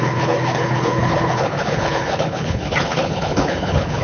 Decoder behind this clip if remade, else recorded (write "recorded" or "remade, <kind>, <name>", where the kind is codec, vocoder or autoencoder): remade, codec, HILCodec